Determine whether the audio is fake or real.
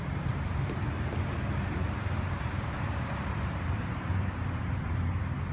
fake